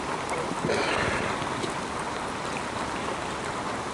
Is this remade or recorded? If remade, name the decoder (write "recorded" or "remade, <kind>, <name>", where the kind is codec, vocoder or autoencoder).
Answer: recorded